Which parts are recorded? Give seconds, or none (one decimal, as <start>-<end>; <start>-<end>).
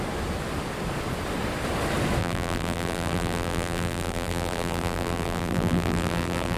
0.0-2.2